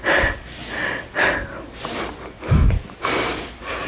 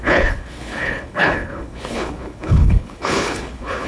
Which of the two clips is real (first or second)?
first